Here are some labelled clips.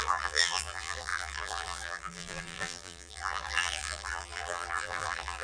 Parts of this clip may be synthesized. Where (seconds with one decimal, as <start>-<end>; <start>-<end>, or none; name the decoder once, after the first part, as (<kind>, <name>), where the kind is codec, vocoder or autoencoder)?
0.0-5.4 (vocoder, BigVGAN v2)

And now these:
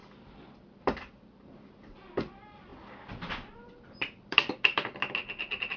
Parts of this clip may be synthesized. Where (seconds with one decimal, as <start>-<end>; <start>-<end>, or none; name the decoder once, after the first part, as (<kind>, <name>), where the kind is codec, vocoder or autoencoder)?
0.0-2.7 (vocoder, BigVGAN v2); 3.5-5.8

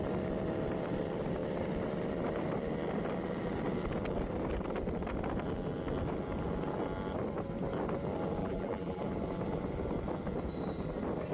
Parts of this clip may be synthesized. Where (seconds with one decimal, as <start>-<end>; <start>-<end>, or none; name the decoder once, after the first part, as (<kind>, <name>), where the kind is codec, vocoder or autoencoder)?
8.4-9.0 (vocoder, BigVGAN v2)

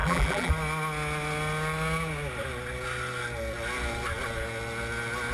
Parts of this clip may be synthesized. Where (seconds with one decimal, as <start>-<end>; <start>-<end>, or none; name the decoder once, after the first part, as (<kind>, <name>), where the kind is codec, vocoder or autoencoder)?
0.0-0.5 (vocoder, BigVGAN v2)

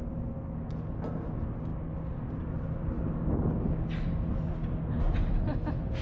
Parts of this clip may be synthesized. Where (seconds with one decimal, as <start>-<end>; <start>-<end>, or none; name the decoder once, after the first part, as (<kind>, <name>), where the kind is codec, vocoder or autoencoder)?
1.7-2.3 (vocoder, BigVGAN v2)

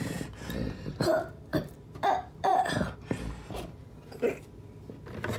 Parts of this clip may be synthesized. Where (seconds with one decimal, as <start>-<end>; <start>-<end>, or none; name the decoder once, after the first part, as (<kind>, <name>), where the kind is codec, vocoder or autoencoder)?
0.0-3.8 (vocoder, BigVGAN v2)

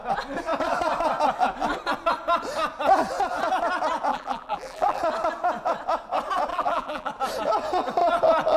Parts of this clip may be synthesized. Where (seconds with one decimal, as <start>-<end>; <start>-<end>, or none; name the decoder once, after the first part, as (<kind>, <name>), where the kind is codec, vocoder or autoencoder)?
4.1-5.0 (vocoder, BigVGAN v2); 6.5-7.1

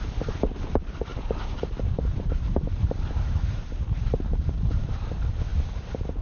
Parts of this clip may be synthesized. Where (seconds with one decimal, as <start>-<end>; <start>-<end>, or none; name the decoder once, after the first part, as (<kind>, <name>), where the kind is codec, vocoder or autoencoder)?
1.1-4.8 (vocoder, BigVGAN v2); 5.5-6.2